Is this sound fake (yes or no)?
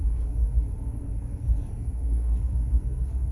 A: yes